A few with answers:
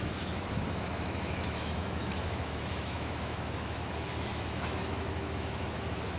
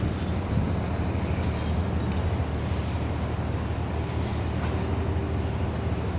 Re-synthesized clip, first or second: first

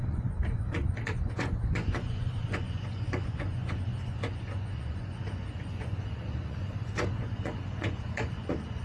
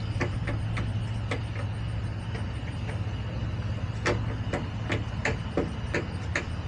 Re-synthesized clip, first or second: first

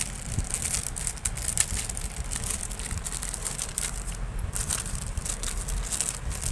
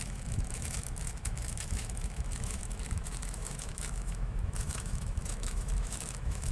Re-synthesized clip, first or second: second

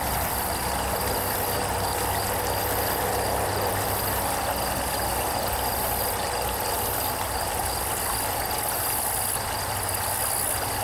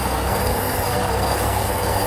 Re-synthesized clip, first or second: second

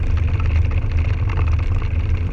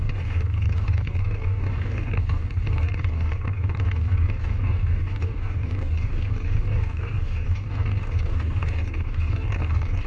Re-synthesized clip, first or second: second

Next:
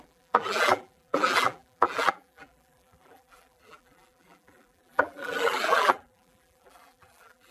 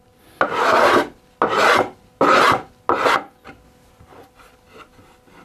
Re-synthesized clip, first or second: first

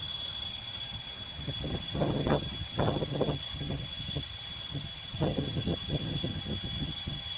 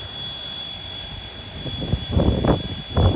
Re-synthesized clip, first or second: first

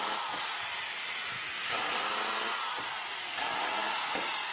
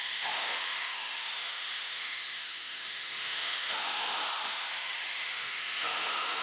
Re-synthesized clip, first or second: second